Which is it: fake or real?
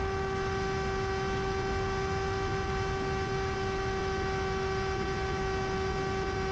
real